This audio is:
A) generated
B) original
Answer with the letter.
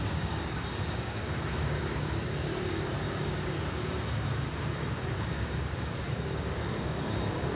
A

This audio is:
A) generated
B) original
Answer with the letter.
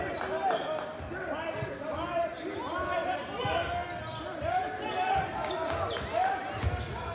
B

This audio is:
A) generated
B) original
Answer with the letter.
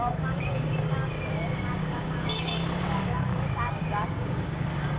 A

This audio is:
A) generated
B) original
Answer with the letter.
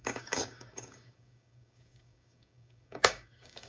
A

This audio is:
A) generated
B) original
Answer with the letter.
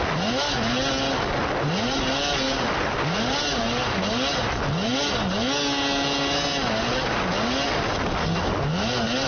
B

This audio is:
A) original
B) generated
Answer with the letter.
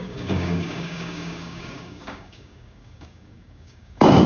B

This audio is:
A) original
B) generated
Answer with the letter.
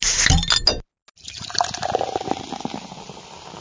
A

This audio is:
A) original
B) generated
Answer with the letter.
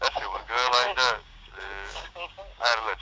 B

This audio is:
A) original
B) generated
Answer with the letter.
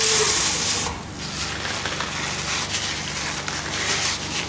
A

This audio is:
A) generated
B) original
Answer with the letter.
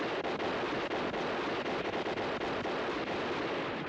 B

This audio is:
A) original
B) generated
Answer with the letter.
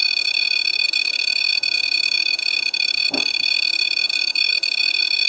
B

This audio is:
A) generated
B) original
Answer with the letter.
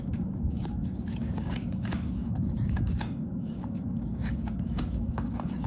A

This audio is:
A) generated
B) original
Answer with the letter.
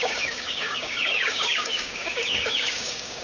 A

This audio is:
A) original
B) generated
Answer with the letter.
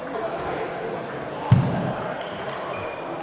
A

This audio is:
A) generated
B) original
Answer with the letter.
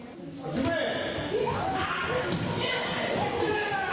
B